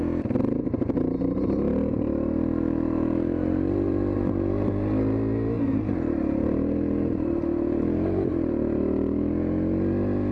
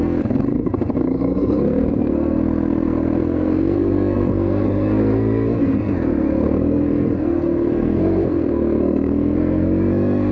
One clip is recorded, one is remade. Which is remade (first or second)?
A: second